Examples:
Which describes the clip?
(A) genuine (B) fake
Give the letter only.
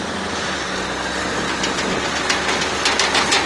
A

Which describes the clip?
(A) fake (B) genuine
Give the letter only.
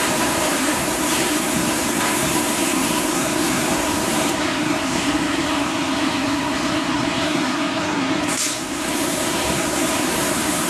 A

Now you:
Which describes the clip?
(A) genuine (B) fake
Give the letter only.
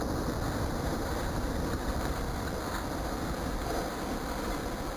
B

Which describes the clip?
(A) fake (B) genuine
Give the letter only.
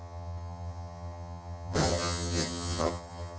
A